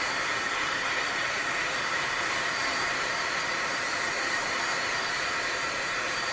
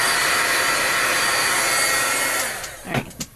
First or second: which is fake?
first